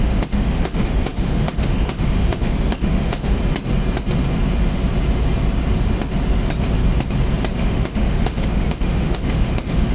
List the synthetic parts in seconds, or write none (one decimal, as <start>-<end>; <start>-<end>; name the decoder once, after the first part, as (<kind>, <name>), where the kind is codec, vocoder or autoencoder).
0.0-3.4 (autoencoder, DAC-VAE); 7.6-9.9